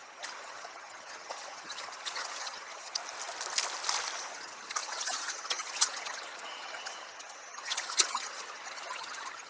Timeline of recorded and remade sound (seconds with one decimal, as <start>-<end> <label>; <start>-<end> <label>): 0.0-3.0 remade; 3.0-4.3 recorded; 4.3-9.5 remade